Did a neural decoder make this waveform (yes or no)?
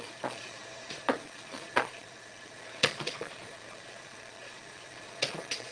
yes